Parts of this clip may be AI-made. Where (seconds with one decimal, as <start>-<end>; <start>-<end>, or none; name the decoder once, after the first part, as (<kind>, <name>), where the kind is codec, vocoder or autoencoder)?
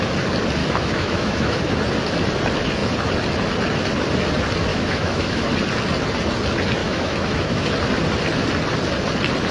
0.6-1.6 (autoencoder, DAC-VAE); 4.7-5.4; 6.8-7.7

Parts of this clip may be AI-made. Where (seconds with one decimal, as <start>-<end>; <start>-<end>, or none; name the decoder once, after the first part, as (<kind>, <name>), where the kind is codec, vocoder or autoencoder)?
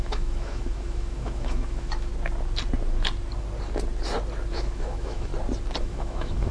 0.0-2.1 (autoencoder, DAC-VAE); 4.5-5.3; 5.8-6.5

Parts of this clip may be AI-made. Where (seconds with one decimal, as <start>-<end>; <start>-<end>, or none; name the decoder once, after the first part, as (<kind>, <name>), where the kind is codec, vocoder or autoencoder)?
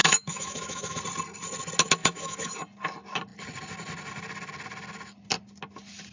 0.0-1.0 (autoencoder, DAC-VAE); 2.0-2.5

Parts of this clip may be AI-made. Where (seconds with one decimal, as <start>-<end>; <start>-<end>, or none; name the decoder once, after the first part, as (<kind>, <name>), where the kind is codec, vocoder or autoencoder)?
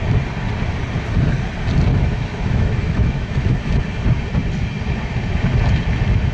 1.9-3.7 (autoencoder, DAC-VAE)